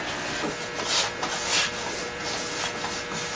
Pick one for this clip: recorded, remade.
recorded